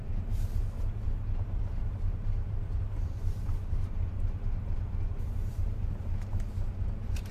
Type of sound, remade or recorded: remade